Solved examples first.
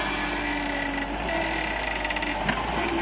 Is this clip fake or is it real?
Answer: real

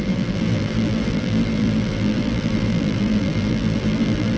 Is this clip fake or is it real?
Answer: fake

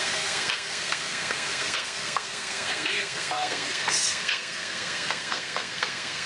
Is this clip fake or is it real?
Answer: fake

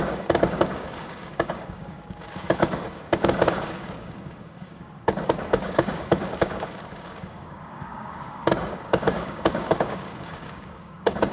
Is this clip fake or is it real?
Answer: fake